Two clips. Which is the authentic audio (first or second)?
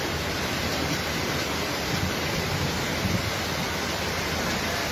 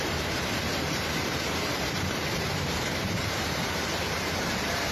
first